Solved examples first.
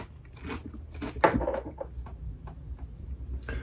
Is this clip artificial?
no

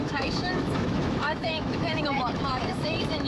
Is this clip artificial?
yes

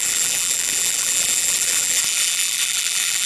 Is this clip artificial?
yes